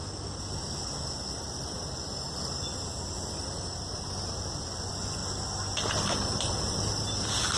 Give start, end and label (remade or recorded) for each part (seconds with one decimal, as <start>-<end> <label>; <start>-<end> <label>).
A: 0.0-4.6 recorded; 4.6-5.2 remade; 5.2-7.6 recorded